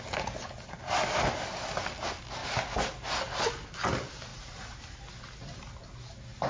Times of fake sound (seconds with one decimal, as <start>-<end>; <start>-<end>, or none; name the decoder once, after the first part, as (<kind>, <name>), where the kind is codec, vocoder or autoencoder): 4.3-4.8 (vocoder, Vocos)